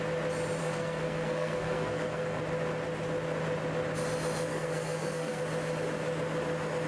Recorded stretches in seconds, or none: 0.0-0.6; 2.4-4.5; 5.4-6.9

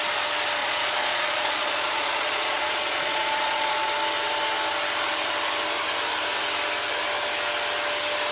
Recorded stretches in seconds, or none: 0.0-0.6; 3.9-8.3

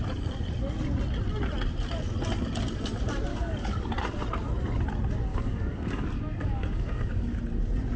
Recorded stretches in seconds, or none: 0.0-3.3; 3.9-5.3; 7.4-8.0

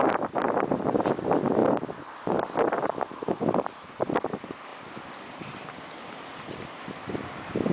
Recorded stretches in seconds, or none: none

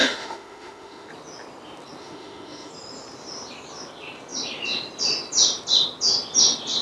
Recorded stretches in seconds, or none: 1.1-2.0; 2.7-6.8

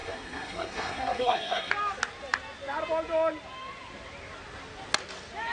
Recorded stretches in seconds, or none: 1.7-5.5

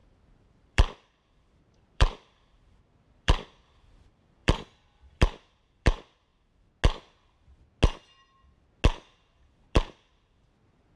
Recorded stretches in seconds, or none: 6.3-9.5

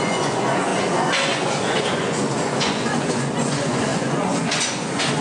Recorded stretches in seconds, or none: none